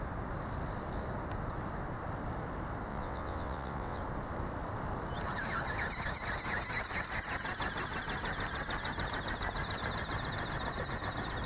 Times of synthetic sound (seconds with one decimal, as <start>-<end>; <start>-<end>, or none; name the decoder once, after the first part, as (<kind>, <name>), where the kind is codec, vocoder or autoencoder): 2.9-4.0 (vocoder, WaveNeXt)